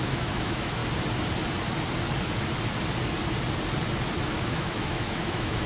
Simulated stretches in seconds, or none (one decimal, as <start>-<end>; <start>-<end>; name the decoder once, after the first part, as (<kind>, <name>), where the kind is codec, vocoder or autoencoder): 0.0-0.8 (autoencoder, DAC-VAE); 4.2-5.7